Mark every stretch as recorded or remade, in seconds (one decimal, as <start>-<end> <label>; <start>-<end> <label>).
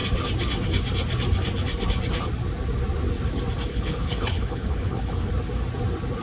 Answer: 0.0-3.7 recorded; 3.7-5.3 remade; 5.3-6.2 recorded